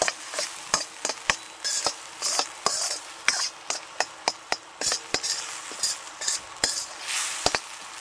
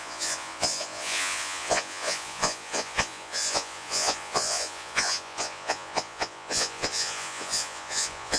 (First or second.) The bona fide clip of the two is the first